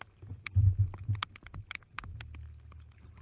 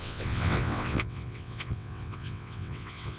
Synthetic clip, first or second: second